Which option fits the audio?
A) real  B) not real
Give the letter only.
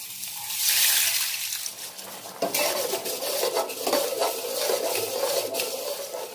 A